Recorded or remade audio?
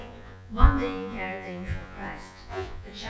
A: remade